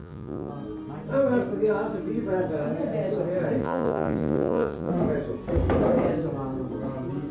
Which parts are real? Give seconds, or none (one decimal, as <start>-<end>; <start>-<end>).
0.5-3.6; 4.9-7.3